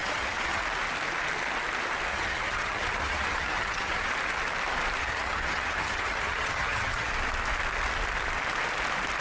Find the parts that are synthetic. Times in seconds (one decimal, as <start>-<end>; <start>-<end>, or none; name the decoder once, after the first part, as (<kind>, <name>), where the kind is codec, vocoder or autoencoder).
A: 0.0-0.6 (vocoder, HiFi-GAN); 2.1-4.1; 5.0-7.1